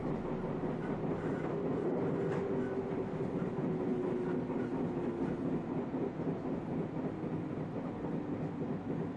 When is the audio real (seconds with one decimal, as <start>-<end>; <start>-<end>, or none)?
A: 0.0-9.2